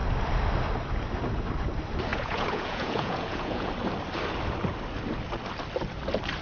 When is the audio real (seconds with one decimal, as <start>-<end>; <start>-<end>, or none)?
0.0-2.1; 3.7-6.4